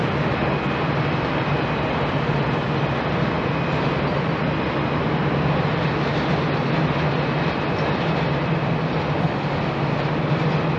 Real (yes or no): yes